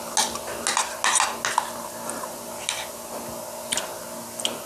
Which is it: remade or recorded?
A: recorded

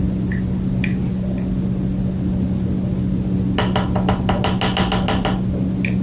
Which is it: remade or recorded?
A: recorded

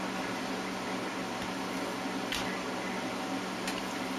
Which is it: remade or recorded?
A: recorded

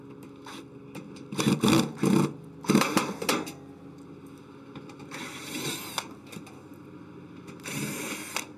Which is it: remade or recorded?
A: recorded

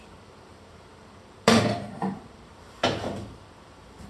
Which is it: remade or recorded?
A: remade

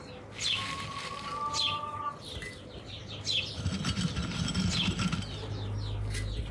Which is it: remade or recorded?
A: recorded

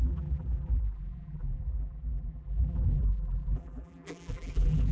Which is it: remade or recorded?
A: remade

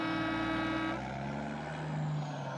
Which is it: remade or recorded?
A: recorded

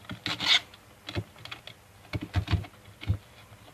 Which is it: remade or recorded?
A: recorded